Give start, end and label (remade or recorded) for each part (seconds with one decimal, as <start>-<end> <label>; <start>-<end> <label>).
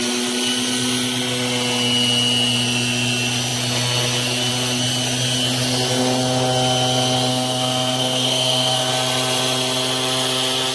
0.0-7.3 recorded; 7.3-8.9 remade; 8.9-10.7 recorded